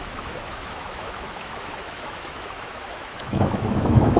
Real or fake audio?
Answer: fake